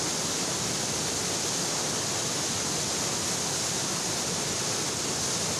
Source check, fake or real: real